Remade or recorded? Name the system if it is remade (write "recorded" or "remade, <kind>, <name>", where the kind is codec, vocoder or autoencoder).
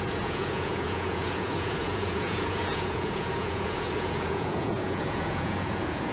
remade, vocoder, Vocos